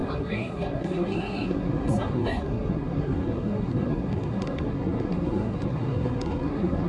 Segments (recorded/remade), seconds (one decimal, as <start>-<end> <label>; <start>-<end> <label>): 0.0-6.9 remade